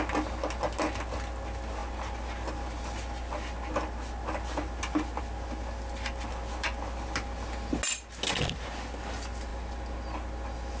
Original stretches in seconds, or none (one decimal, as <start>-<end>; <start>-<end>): 0.0-10.8